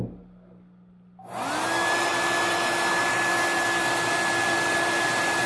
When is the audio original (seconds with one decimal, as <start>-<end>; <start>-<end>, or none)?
0.0-5.5